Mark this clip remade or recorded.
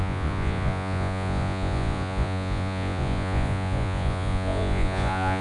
remade